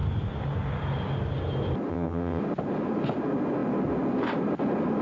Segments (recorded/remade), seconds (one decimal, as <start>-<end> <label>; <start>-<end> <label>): 0.0-1.9 recorded; 1.9-2.4 remade; 2.4-5.0 recorded